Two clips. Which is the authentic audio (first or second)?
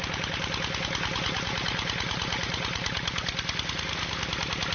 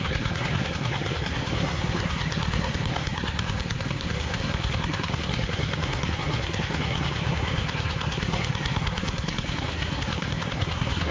first